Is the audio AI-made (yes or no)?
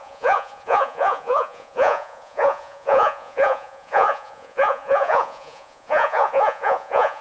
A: yes